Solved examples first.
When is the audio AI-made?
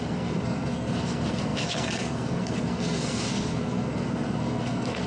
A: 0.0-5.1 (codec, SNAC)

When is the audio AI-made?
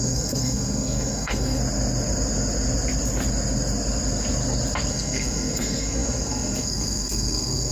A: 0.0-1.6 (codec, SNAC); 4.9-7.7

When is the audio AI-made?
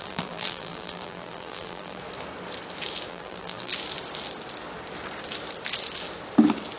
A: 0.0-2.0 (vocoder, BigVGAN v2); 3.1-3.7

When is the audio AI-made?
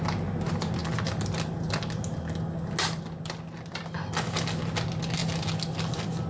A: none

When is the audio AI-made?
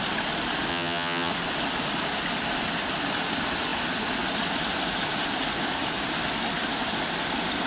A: 0.7-1.3 (vocoder, HiFi-GAN)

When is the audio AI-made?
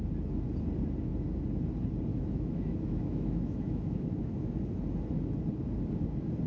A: 2.1-4.6 (autoencoder, DAC-VAE)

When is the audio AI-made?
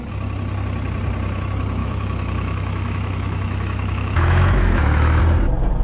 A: 1.8-5.2 (autoencoder, DAC-VAE)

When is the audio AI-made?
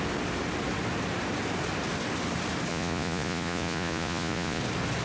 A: 2.7-4.6 (vocoder, Vocos)